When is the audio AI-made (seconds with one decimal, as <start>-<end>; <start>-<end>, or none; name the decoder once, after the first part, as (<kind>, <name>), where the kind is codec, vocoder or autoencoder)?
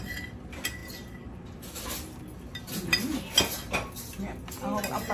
none